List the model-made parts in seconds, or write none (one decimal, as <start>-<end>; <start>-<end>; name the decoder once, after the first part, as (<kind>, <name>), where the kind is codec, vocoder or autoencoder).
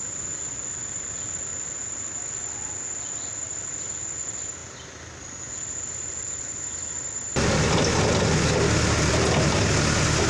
none